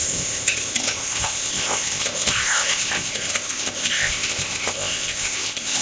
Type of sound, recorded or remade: remade